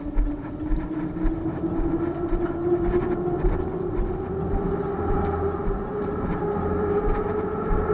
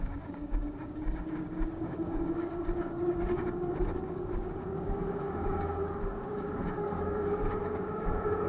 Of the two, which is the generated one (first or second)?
second